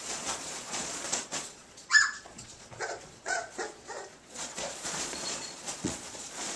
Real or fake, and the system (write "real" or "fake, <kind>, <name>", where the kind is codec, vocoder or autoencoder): fake, vocoder, Vocos